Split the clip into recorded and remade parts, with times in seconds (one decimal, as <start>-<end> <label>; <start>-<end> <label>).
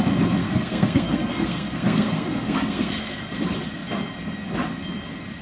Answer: 0.0-0.4 recorded; 0.4-3.2 remade; 3.2-5.4 recorded